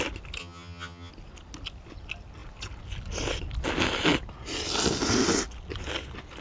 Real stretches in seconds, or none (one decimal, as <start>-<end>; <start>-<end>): 0.0-0.4; 1.1-6.4